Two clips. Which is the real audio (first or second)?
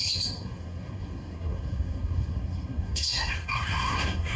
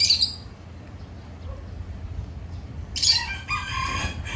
second